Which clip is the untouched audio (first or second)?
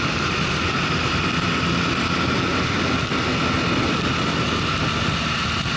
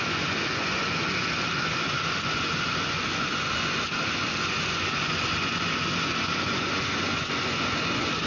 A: first